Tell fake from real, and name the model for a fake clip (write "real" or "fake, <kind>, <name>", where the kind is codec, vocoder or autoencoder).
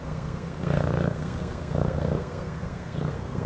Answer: fake, codec, SNAC